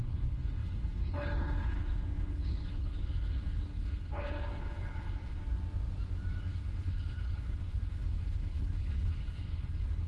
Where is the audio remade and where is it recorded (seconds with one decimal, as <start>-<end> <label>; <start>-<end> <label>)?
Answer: 0.0-5.4 remade; 5.4-6.4 recorded; 6.4-10.1 remade